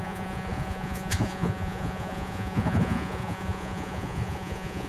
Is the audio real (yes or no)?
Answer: no